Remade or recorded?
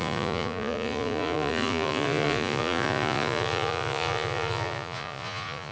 remade